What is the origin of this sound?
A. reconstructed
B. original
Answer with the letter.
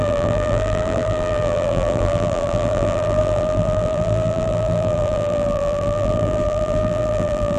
A